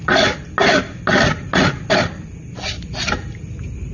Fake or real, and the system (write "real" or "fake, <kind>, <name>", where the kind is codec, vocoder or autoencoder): real